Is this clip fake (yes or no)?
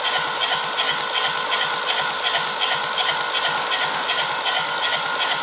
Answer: no